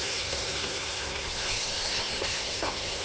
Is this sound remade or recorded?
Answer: remade